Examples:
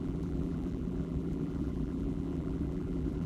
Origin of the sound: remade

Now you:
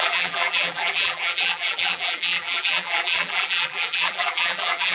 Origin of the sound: remade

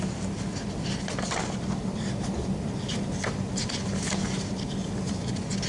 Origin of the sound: recorded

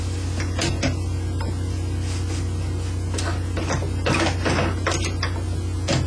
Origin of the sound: recorded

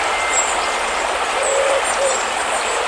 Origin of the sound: recorded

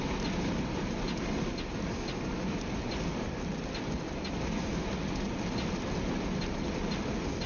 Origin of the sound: recorded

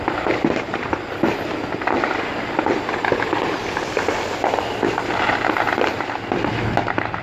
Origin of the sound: recorded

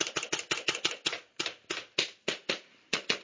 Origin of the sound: recorded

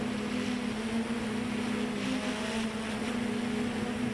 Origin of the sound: recorded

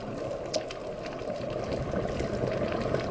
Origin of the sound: recorded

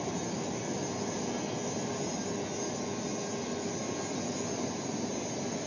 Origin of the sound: recorded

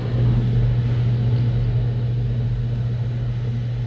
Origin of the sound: recorded